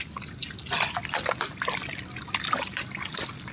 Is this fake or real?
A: real